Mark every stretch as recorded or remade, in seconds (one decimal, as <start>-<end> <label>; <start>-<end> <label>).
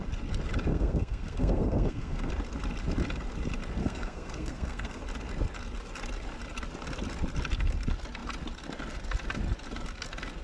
0.0-0.7 recorded; 0.7-2.3 remade; 2.3-3.8 recorded; 3.8-5.0 remade; 5.0-10.4 recorded